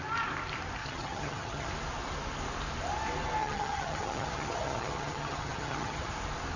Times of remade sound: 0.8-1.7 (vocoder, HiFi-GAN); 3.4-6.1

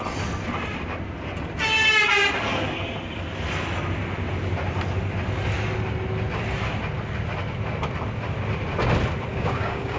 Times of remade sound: 9.3-10.0 (codec, DAC)

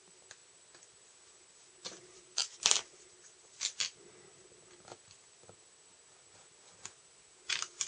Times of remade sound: 0.0-0.4 (vocoder, BigVGAN v2); 2.0-2.4; 6.9-7.9

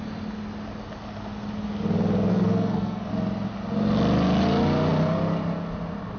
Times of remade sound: 2.3-3.1 (codec, SNAC)

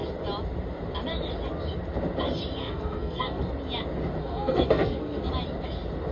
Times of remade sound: 2.6-3.4 (codec, SNAC); 4.2-5.3

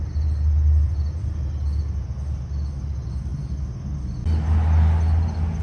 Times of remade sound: none